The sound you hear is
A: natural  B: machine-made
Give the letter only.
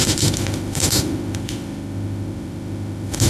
B